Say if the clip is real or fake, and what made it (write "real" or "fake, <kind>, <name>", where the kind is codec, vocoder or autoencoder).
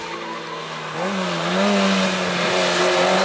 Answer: real